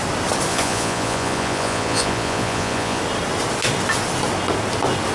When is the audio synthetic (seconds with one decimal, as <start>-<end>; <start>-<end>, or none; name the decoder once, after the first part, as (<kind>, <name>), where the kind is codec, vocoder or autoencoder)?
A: 0.5-3.0 (vocoder, Vocos)